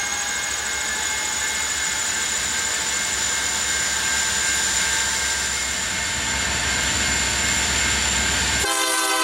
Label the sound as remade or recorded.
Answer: recorded